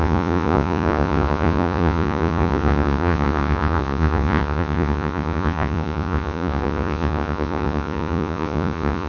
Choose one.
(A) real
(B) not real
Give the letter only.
B